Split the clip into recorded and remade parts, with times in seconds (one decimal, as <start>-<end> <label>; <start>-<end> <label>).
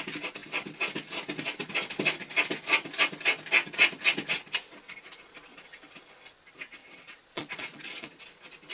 0.0-5.5 recorded; 5.5-6.0 remade; 6.0-6.8 recorded; 6.8-8.2 remade; 8.2-8.7 recorded